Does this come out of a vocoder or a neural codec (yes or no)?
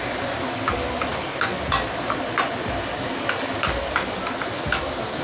no